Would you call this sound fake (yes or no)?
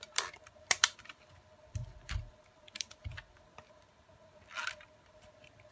yes